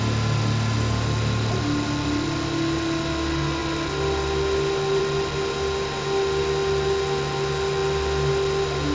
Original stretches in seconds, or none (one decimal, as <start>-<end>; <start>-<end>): 0.0-8.9